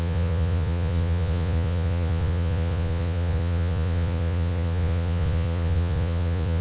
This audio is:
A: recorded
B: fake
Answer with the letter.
B